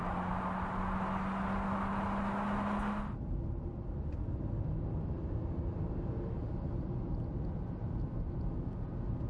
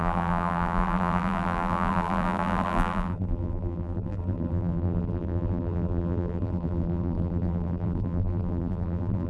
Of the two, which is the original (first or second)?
first